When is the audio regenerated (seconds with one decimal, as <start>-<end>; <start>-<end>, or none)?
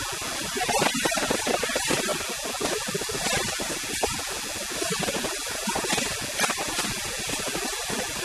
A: none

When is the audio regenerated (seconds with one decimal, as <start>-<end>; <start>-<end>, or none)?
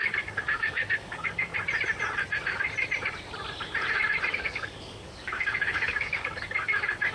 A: 0.0-1.5; 4.3-7.1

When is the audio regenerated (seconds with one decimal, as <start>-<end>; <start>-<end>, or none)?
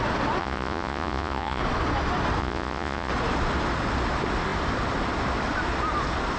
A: 0.4-1.6; 2.4-3.1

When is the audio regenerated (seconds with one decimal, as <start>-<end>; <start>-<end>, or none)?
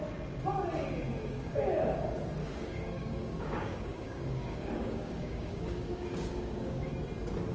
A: 1.2-1.7; 2.4-6.9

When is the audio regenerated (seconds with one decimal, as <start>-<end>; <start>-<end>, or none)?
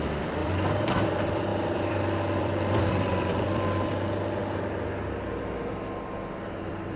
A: 0.0-4.4; 6.6-7.0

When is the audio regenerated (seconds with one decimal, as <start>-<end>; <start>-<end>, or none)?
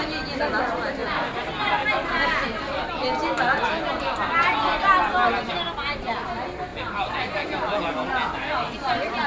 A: none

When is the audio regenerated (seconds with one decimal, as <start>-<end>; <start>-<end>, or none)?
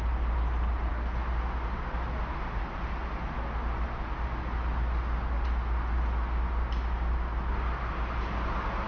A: none